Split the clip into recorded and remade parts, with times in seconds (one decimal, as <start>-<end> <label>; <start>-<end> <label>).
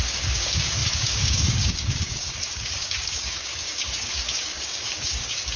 0.0-5.6 remade